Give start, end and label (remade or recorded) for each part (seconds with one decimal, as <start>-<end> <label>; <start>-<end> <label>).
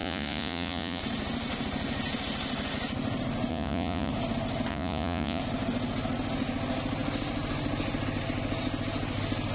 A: 0.0-1.0 remade; 1.0-3.5 recorded; 3.5-4.1 remade; 4.1-4.7 recorded; 4.7-5.4 remade; 5.4-9.5 recorded